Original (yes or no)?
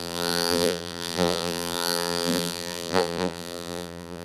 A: no